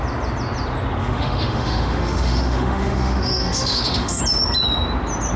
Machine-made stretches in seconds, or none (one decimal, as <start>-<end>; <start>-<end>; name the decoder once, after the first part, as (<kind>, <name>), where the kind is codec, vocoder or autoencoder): 1.0-4.2 (autoencoder, DAC-VAE)

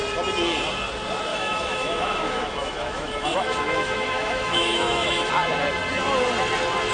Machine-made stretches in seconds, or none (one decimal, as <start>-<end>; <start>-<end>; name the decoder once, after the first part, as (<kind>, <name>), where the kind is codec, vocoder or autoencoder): 1.3-5.3 (autoencoder, DAC-VAE)

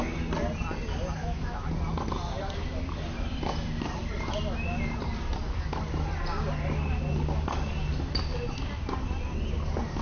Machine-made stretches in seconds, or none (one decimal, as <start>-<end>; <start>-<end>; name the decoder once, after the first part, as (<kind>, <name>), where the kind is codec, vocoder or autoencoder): 1.2-1.7 (autoencoder, DAC-VAE)

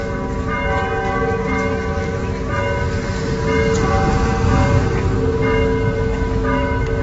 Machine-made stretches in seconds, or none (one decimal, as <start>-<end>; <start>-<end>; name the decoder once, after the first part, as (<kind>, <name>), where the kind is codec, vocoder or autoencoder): 6.1-7.0 (autoencoder, DAC-VAE)

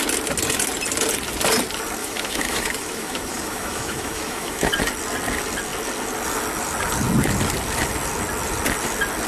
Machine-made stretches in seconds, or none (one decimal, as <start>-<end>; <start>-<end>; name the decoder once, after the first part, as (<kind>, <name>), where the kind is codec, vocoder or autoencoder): 2.0-4.7 (autoencoder, DAC-VAE)